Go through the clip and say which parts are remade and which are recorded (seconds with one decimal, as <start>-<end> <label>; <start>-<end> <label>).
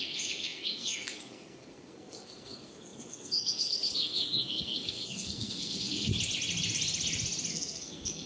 0.0-6.1 remade; 6.1-7.5 recorded; 7.5-8.3 remade